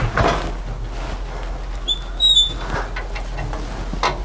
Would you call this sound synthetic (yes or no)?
no